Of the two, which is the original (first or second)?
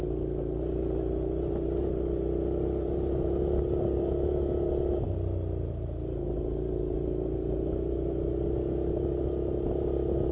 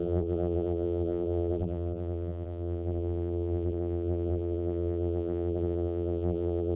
first